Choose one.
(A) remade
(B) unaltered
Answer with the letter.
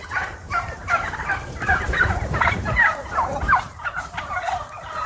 A